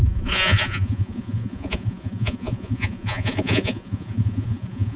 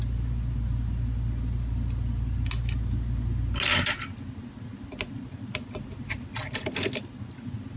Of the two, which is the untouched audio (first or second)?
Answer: second